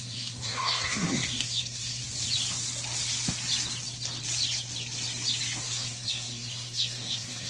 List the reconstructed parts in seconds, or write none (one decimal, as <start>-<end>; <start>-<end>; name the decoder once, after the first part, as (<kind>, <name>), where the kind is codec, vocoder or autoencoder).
0.0-2.0 (codec, SNAC); 5.6-7.5